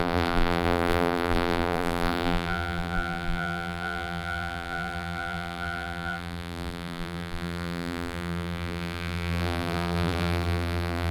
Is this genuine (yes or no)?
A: no